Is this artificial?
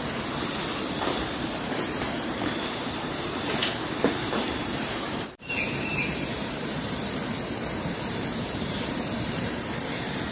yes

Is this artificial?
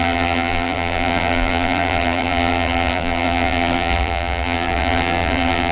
yes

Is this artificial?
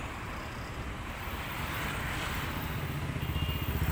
no